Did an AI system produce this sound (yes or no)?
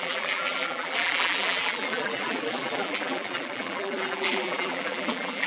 yes